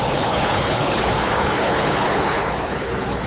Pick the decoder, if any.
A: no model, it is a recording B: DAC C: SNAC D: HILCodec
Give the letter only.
D